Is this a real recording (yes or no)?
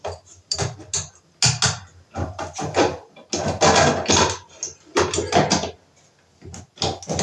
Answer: yes